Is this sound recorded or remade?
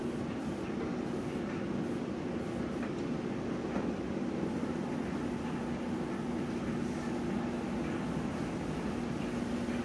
recorded